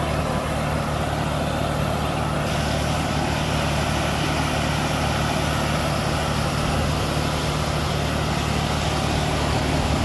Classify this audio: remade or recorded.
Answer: recorded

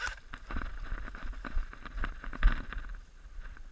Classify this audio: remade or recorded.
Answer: recorded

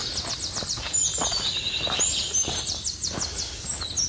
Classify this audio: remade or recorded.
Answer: recorded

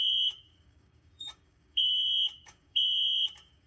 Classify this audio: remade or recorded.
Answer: remade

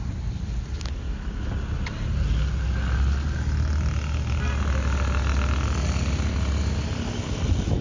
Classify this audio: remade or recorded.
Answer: recorded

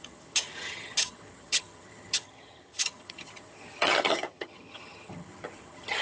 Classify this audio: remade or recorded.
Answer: remade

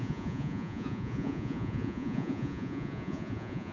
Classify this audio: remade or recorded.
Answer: remade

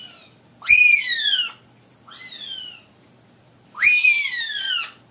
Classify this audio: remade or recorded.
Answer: recorded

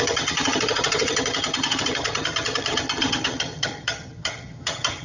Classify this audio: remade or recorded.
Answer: remade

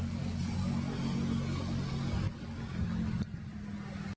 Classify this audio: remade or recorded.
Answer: recorded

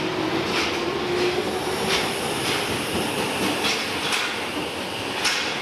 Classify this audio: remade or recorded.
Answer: recorded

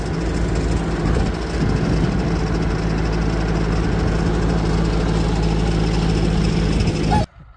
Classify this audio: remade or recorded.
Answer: recorded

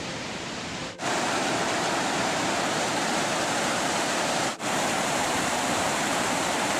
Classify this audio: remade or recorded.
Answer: remade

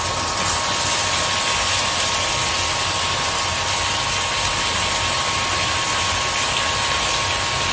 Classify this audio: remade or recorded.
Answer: recorded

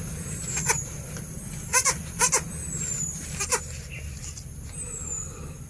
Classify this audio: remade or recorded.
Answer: recorded